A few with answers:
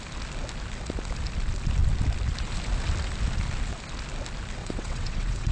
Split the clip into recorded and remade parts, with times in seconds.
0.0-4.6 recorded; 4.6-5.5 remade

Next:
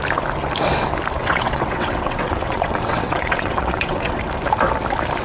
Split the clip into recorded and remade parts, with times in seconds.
0.0-1.2 recorded; 1.2-4.2 remade; 4.2-5.2 recorded

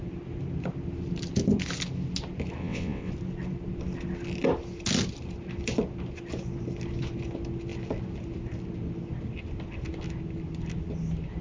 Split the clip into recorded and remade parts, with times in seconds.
0.0-2.6 recorded; 2.6-3.1 remade; 3.1-11.4 recorded

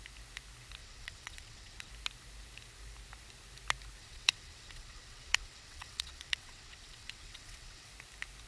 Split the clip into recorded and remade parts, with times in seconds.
0.0-0.8 recorded; 0.8-1.9 remade; 1.9-4.0 recorded; 4.0-7.9 remade; 7.9-8.5 recorded

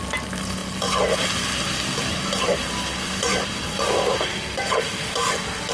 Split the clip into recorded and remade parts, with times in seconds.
0.0-5.7 recorded

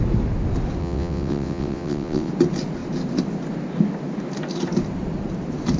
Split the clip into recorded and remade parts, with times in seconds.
0.0-0.8 recorded; 0.8-2.3 remade; 2.3-5.8 recorded

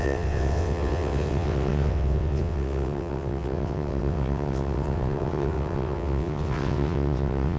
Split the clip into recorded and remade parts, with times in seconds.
0.0-7.6 remade